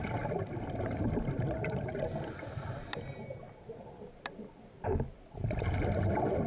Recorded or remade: recorded